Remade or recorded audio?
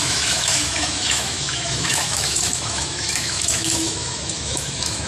remade